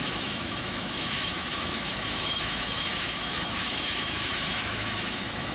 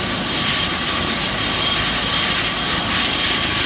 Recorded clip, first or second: second